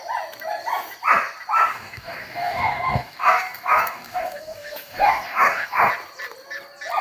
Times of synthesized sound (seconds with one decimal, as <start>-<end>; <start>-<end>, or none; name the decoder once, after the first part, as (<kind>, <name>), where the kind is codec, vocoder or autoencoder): 1.7-5.9 (codec, DAC)